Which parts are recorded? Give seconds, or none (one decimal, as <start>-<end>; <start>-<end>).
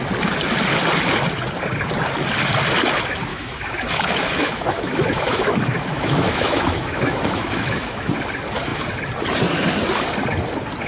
0.0-3.3; 8.1-10.9